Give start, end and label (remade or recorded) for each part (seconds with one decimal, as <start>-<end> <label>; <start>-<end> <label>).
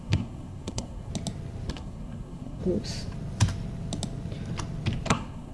0.0-1.1 remade; 1.1-1.7 recorded; 1.7-2.6 remade; 2.6-5.1 recorded; 5.1-5.5 remade